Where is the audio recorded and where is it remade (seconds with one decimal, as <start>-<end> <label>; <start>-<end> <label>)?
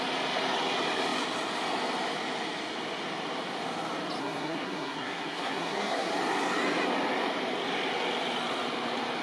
0.0-4.2 recorded; 4.2-6.1 remade; 6.1-9.2 recorded